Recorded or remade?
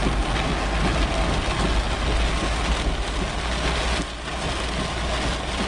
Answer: recorded